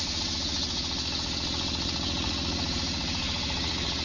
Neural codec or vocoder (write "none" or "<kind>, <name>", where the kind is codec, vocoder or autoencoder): vocoder, Vocos